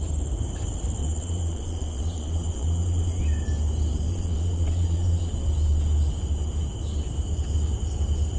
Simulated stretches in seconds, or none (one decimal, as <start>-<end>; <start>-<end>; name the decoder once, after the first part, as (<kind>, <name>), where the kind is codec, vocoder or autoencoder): 1.0-3.2 (vocoder, Vocos); 4.1-5.3